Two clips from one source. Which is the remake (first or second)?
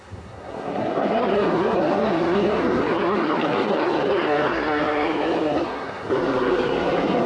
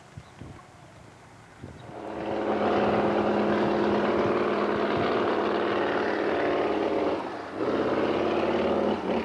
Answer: first